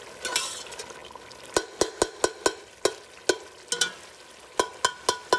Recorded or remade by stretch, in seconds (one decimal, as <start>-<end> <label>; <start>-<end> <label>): 0.0-5.4 recorded